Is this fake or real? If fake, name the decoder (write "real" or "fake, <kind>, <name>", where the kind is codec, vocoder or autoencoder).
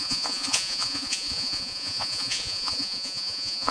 fake, vocoder, Vocos